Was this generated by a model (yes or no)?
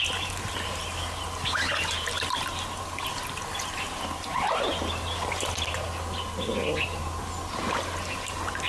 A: no